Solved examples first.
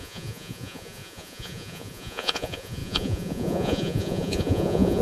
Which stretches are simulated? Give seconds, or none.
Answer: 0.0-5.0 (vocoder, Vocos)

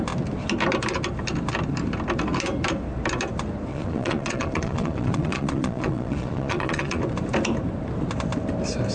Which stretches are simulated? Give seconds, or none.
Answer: 3.7-7.0 (vocoder, Vocos)